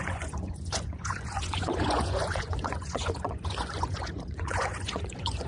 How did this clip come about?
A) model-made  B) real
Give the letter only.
A